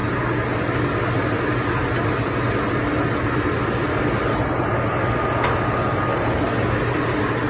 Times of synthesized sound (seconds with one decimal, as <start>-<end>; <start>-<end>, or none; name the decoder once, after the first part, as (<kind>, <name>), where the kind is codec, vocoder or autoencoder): none